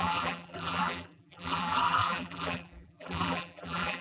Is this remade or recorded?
remade